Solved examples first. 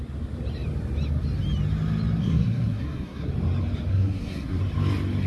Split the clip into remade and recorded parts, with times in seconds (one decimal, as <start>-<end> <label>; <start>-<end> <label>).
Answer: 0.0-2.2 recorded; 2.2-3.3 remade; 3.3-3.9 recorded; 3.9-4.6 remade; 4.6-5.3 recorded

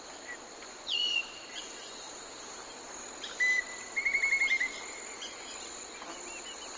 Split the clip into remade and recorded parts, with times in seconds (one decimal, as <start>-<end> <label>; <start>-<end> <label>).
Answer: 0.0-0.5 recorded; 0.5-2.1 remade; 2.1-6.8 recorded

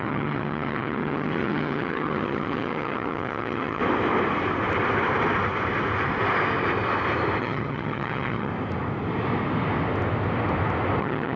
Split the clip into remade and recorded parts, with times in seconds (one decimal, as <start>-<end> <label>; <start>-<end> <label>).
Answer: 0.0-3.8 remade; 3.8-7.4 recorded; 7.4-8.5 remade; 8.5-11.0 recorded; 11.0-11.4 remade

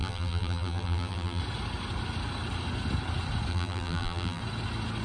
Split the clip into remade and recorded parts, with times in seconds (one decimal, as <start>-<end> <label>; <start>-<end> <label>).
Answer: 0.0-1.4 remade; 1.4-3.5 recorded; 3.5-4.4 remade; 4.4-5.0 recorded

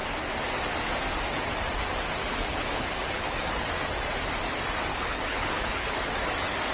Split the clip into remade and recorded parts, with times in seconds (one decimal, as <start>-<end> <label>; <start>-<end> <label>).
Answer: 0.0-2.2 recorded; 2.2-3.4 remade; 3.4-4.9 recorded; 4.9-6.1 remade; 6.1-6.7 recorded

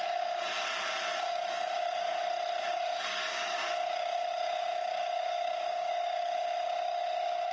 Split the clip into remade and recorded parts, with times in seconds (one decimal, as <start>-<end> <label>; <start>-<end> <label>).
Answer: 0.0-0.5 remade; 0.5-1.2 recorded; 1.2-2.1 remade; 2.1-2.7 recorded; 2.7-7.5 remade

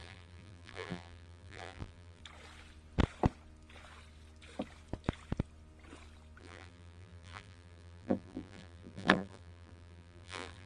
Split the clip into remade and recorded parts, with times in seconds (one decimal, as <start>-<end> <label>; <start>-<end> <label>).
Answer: 0.0-2.2 remade; 2.2-6.4 recorded; 6.4-10.7 remade